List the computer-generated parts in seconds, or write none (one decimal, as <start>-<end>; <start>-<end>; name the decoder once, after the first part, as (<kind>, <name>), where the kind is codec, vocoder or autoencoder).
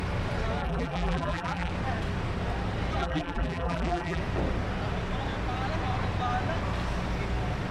0.6-1.7 (vocoder, BigVGAN v2); 3.0-4.2